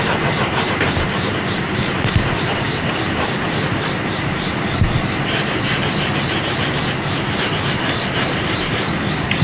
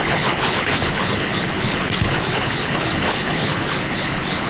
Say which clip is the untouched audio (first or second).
first